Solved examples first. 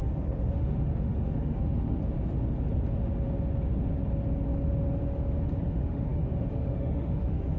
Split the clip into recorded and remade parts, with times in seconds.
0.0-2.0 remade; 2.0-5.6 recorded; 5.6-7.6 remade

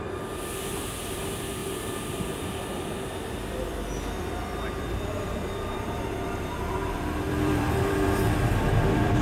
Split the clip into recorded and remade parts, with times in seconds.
0.0-1.6 remade; 1.6-4.8 recorded; 4.8-9.2 remade

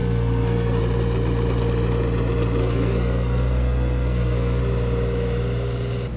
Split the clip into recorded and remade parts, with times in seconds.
0.0-0.8 remade; 0.8-2.6 recorded; 2.6-4.6 remade; 4.6-6.2 recorded

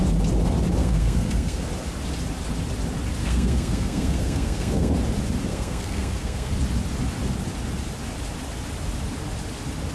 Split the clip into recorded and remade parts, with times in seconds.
0.0-0.8 recorded; 0.8-1.7 remade; 1.7-3.2 recorded; 3.2-4.9 remade; 4.9-5.5 recorded; 5.5-6.5 remade; 6.5-9.9 recorded

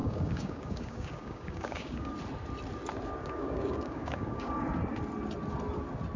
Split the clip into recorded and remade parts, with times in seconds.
0.0-2.1 remade; 2.1-3.2 recorded; 3.2-4.5 remade; 4.5-6.2 recorded

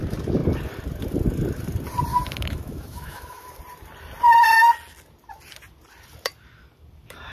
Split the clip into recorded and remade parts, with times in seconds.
0.0-2.1 recorded; 2.1-3.6 remade; 3.6-7.3 recorded

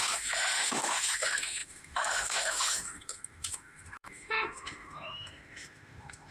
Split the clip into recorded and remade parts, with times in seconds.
0.0-6.3 remade